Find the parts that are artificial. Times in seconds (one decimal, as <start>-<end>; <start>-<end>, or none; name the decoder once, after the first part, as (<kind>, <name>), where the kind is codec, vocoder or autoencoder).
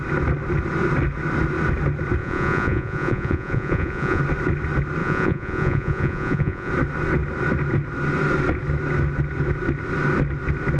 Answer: 2.2-4.2 (vocoder, Vocos); 5.0-6.7